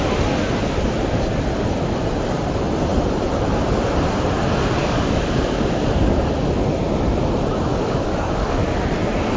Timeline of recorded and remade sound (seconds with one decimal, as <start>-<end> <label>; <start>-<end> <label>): 0.0-4.8 recorded; 4.8-6.3 remade; 6.3-7.7 recorded; 7.7-8.8 remade; 8.8-9.4 recorded